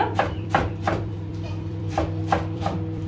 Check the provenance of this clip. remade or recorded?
remade